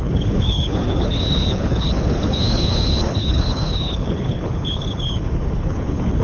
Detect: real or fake fake